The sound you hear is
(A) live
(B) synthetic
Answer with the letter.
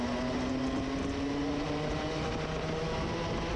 A